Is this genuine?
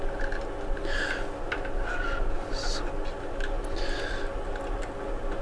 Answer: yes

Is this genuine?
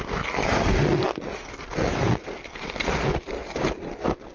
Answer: yes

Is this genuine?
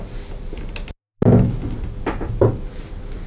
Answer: yes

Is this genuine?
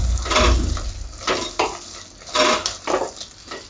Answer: yes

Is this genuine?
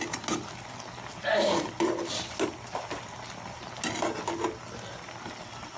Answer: yes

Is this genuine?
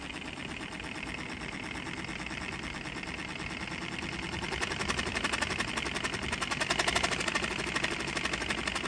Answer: yes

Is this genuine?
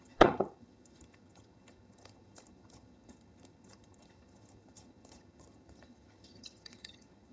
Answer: no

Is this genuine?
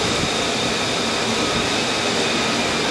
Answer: yes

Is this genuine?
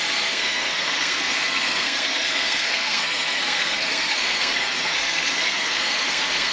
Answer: no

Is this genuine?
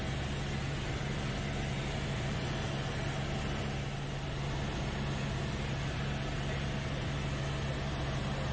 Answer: yes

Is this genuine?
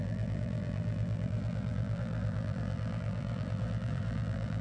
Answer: no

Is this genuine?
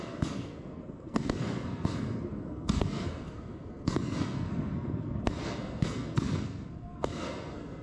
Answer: no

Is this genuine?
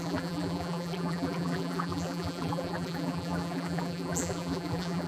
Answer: no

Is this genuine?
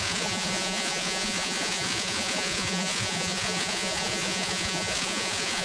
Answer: no